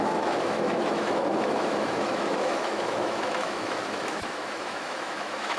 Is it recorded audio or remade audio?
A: remade